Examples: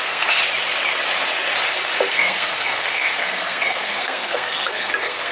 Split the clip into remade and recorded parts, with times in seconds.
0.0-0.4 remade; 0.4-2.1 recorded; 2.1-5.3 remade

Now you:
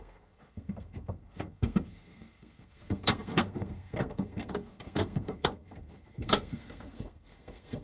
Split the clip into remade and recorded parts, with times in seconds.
0.0-7.8 remade

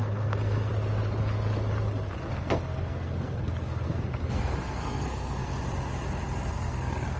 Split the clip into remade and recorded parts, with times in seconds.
0.0-0.7 remade; 0.7-2.3 recorded; 2.3-5.5 remade; 5.5-6.5 recorded; 6.5-7.2 remade

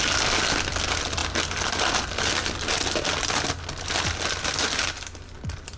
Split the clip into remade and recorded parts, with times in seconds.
0.0-5.8 recorded